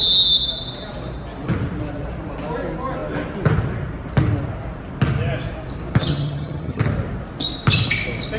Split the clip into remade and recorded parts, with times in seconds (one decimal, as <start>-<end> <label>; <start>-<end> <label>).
0.0-6.0 recorded; 6.0-6.8 remade; 6.8-8.4 recorded